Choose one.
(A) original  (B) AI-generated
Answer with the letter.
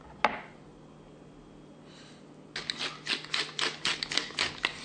A